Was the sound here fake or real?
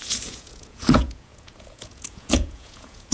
fake